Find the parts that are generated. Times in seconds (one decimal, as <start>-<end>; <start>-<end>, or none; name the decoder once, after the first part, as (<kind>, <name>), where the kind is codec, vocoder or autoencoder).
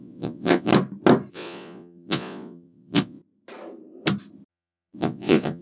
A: 0.0-0.7 (vocoder, Vocos); 1.3-3.2; 4.5-5.6